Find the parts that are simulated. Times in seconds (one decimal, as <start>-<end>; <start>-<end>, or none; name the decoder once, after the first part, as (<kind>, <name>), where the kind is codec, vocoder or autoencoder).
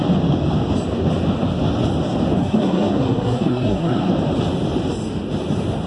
2.4-4.1 (codec, SNAC)